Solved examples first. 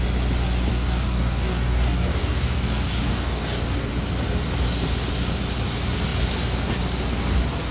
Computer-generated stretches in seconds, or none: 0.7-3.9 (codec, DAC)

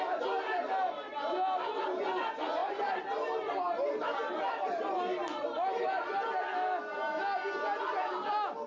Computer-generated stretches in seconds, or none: none

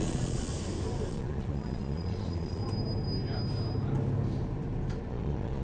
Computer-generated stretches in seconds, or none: 0.0-0.5 (vocoder, Vocos); 1.1-2.6; 5.1-5.6